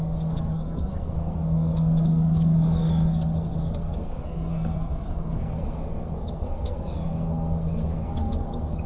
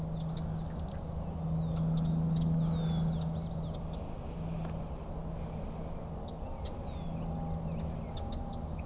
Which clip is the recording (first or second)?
second